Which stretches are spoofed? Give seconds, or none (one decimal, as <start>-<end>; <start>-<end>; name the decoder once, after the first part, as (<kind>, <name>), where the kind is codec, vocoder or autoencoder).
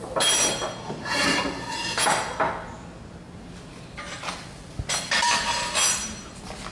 none